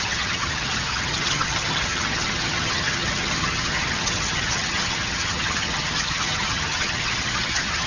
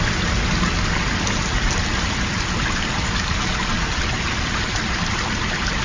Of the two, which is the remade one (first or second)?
first